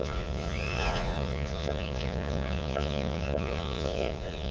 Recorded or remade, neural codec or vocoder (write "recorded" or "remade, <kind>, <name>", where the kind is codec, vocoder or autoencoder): remade, vocoder, Vocos